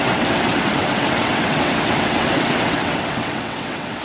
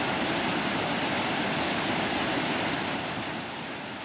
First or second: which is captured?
second